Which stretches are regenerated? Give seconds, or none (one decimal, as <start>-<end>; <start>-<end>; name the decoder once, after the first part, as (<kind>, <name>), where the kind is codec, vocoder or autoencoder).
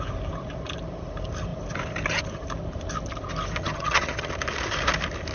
3.6-4.3 (vocoder, HiFi-GAN)